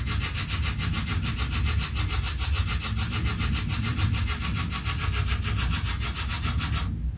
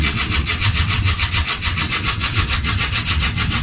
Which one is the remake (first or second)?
second